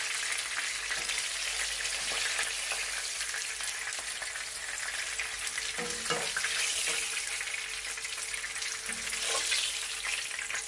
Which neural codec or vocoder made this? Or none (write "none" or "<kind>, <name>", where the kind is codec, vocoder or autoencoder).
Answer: none